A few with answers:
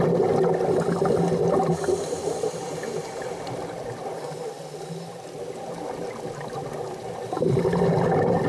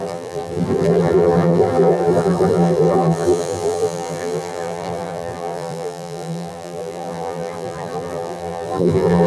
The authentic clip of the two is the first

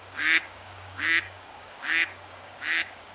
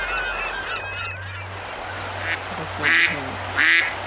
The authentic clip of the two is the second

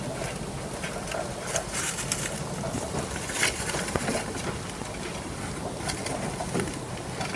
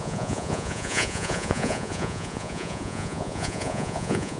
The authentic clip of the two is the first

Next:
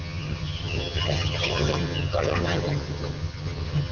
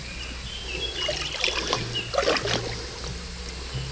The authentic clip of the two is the second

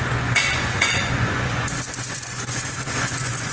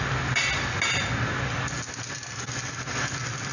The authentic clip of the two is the second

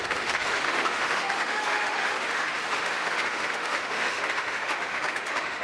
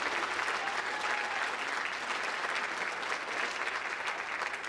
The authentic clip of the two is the second